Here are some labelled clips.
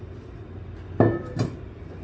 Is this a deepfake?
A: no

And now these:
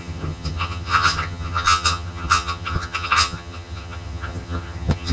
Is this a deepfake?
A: yes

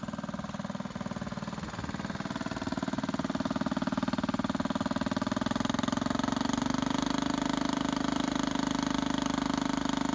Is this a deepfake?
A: no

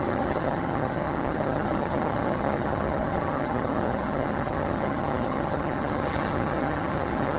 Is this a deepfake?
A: yes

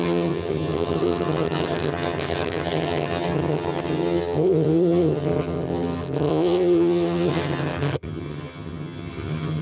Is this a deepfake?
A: yes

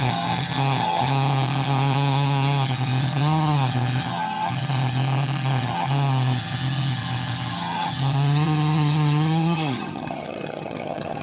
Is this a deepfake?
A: yes